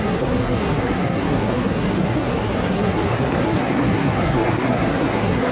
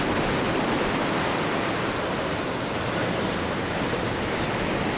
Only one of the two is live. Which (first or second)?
second